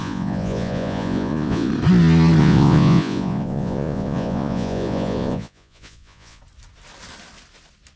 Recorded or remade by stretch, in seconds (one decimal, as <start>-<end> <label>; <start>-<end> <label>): 0.0-1.7 remade; 1.7-2.4 recorded; 2.4-6.4 remade; 6.4-8.0 recorded